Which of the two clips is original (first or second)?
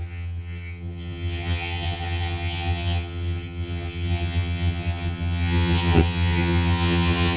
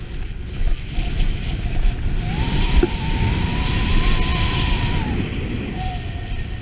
second